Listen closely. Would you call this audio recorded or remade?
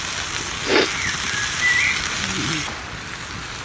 recorded